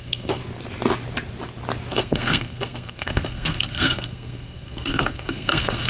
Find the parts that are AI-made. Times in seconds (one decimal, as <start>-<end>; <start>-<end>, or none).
0.0-0.4; 1.9-5.9